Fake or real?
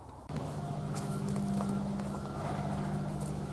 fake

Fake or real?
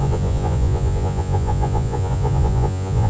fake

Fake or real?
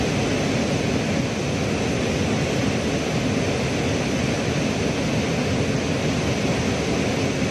real